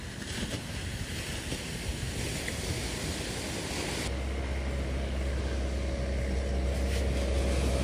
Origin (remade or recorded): recorded